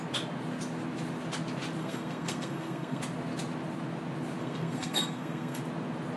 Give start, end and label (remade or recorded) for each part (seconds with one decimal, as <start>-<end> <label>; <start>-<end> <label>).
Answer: 0.0-1.8 recorded; 1.8-3.0 remade; 3.0-4.4 recorded; 4.4-5.6 remade; 5.6-6.2 recorded